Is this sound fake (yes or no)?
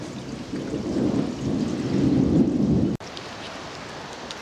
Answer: no